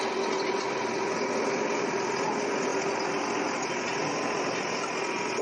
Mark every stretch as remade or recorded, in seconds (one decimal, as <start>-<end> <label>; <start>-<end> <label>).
0.0-5.4 recorded